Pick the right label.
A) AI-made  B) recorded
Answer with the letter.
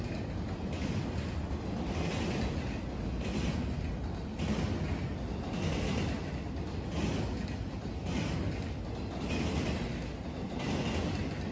B